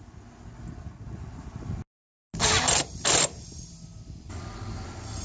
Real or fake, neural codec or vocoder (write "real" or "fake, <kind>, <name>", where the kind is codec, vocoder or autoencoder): real